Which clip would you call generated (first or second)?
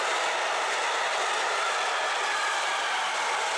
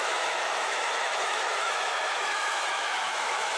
second